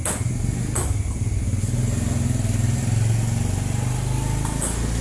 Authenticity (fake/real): real